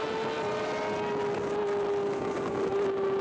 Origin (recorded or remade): recorded